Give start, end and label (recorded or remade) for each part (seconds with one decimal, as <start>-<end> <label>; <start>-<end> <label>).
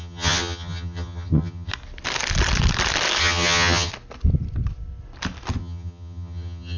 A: 0.0-1.7 remade; 1.7-3.2 recorded; 3.2-3.9 remade; 3.9-5.6 recorded; 5.6-6.8 remade